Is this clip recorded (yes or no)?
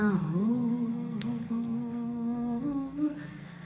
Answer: no